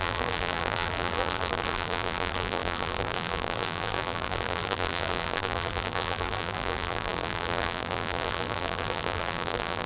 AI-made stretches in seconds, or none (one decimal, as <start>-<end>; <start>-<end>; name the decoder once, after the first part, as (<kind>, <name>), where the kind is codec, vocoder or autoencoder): 0.0-9.9 (vocoder, BigVGAN v2)